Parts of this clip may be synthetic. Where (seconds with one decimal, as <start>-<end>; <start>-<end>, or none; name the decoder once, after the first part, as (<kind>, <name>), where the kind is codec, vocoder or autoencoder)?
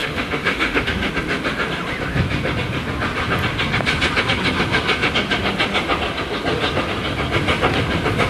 0.0-1.1 (autoencoder, DAC-VAE)